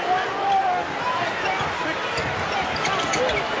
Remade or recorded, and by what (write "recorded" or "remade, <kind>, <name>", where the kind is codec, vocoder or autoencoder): recorded